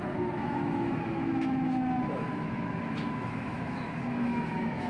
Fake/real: fake